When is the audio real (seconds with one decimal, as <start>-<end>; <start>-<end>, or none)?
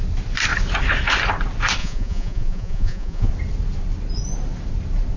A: 0.0-1.8; 3.3-5.2